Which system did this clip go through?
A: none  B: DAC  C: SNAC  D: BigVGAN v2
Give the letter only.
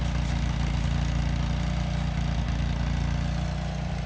A